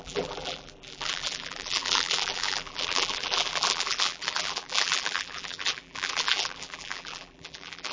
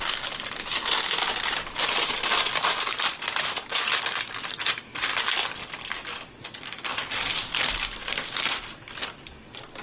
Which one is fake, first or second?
first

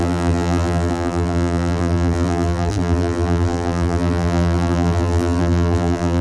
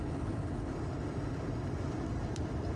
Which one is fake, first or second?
first